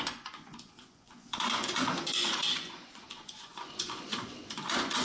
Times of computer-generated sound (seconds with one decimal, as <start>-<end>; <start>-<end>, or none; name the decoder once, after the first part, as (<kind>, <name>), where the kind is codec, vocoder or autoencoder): 0.0-5.0 (vocoder, Vocos)